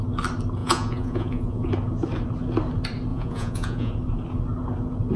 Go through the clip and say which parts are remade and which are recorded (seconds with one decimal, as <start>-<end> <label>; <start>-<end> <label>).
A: 0.0-0.6 recorded; 0.6-1.7 remade; 1.7-3.1 recorded; 3.1-3.9 remade; 3.9-5.2 recorded

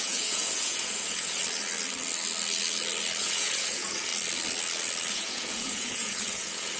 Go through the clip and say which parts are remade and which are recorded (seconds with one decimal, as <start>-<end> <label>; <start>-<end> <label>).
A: 0.0-1.4 remade; 1.4-3.2 recorded; 3.2-4.1 remade; 4.1-5.1 recorded; 5.1-6.8 remade

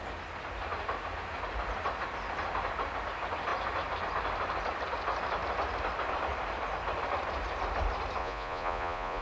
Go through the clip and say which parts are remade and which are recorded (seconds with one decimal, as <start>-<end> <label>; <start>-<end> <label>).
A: 0.0-8.2 recorded; 8.2-9.2 remade

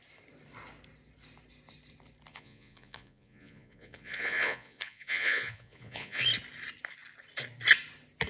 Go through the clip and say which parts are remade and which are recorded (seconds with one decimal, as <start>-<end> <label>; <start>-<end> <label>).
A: 0.0-2.3 recorded; 2.3-6.2 remade; 6.2-8.3 recorded

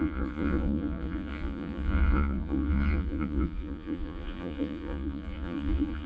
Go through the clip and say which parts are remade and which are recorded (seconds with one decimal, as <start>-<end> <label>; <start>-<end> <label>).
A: 0.0-6.1 remade

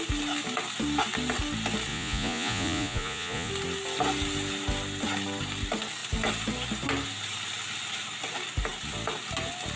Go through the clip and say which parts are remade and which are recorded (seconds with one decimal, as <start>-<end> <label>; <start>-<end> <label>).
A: 0.0-1.9 recorded; 1.9-3.5 remade; 3.5-9.8 recorded

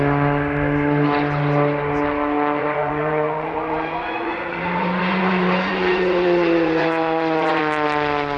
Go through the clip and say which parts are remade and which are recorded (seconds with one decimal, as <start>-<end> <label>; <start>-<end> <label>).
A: 0.0-2.6 recorded; 2.6-7.6 remade; 7.6-8.4 recorded

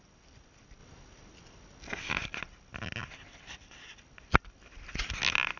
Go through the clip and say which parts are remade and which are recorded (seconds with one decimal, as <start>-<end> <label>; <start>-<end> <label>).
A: 0.0-5.6 recorded